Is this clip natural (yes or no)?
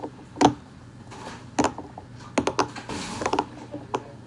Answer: yes